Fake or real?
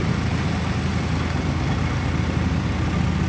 real